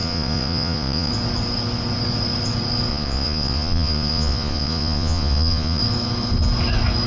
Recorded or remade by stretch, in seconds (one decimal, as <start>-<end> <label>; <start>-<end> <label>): 0.0-1.1 remade; 1.1-2.9 recorded; 2.9-5.8 remade; 5.8-7.1 recorded